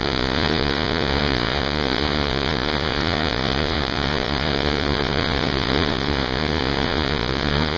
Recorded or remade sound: remade